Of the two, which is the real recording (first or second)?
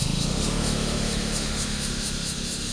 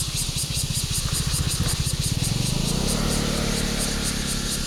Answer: second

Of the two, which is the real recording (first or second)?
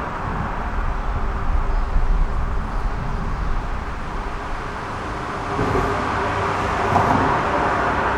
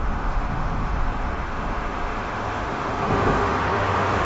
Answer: first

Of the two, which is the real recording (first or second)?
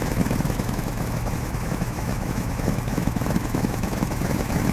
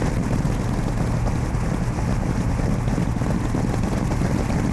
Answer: second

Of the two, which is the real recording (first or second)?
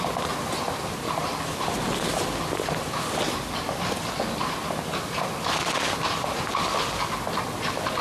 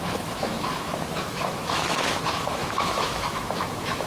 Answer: first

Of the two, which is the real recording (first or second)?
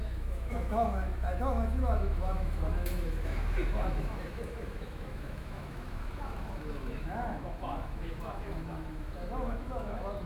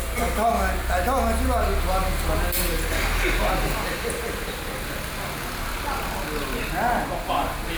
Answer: second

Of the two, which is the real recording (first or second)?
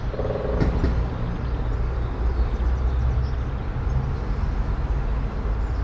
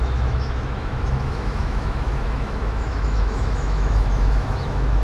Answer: first